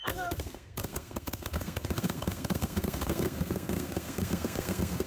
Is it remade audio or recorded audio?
remade